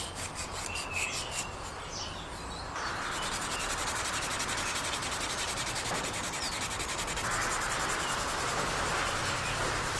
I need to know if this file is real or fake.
fake